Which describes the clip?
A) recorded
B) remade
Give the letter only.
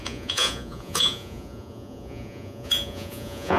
B